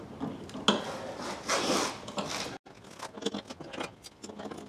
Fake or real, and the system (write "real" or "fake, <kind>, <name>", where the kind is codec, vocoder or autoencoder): real